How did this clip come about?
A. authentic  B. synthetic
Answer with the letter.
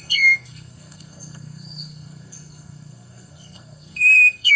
B